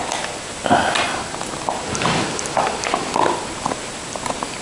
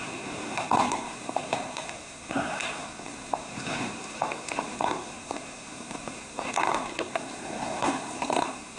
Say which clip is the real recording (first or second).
first